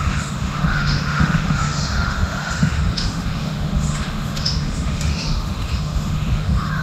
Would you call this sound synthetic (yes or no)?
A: yes